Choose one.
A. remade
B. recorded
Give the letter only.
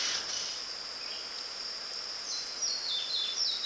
B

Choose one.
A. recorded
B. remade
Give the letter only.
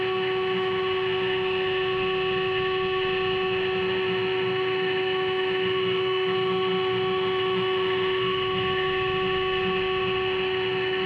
B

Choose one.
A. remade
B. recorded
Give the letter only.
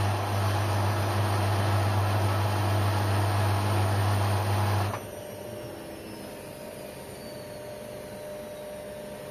B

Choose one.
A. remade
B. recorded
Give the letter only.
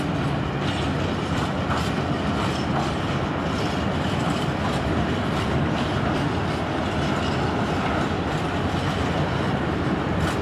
B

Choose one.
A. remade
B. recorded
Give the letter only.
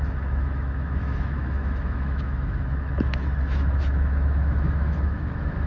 A